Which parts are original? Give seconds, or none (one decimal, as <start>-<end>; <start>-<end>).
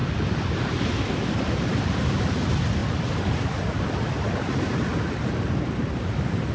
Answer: 0.0-6.5